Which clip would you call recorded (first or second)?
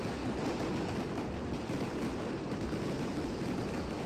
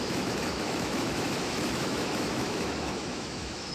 first